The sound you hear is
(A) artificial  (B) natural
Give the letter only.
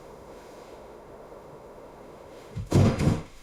A